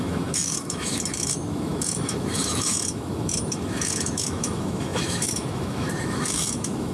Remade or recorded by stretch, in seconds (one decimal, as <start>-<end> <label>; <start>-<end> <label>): 0.0-6.9 remade